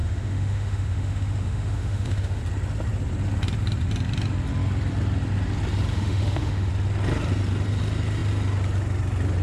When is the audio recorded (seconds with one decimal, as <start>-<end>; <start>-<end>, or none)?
2.4-5.9; 6.7-9.4